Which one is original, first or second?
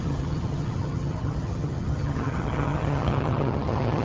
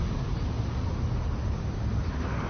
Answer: second